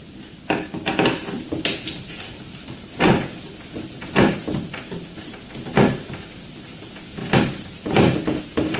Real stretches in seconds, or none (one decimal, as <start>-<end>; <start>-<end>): 0.0-8.8